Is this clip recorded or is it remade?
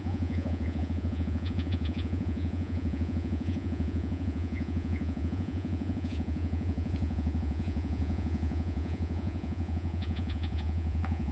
remade